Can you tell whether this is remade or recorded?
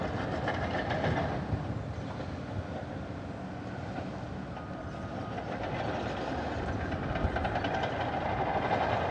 recorded